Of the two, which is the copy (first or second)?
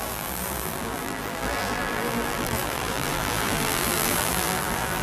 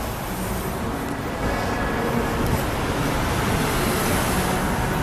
first